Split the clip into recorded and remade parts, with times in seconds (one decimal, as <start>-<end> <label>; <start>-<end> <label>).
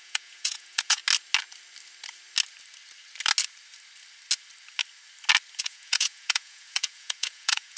0.0-1.0 remade; 1.0-5.6 recorded; 5.6-7.8 remade